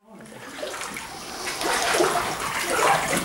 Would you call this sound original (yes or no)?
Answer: yes